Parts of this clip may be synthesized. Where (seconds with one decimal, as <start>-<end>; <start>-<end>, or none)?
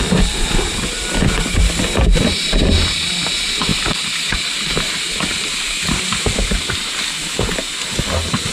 none